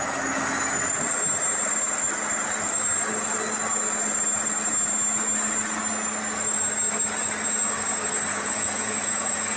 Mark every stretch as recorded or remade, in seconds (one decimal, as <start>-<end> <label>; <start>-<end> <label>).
0.0-8.3 recorded; 8.3-9.6 remade